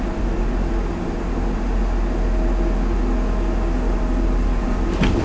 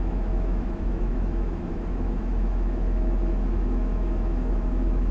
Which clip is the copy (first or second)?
second